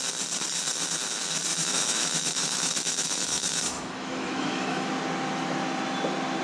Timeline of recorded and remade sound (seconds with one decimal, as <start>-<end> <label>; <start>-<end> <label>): 0.0-1.5 recorded; 1.5-4.9 remade; 4.9-6.4 recorded